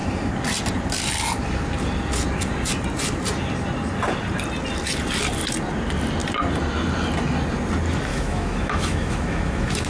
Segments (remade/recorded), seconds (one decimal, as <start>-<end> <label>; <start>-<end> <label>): 0.0-8.1 recorded; 8.1-9.9 remade